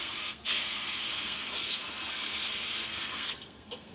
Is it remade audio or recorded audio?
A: remade